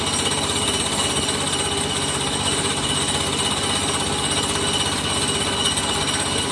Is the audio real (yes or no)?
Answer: yes